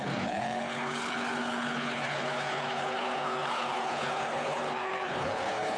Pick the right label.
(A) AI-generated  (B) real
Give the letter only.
A